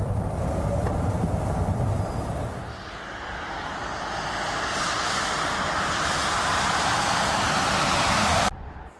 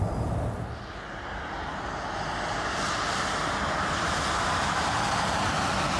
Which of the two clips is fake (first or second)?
first